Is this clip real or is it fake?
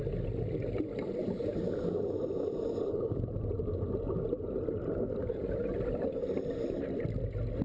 real